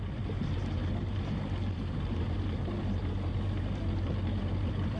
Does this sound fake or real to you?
real